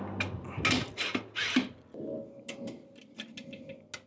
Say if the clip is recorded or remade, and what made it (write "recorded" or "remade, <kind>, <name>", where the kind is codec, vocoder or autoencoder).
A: recorded